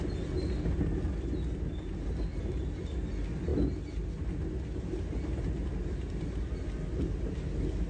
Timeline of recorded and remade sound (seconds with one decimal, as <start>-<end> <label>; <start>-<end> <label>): 0.0-7.9 recorded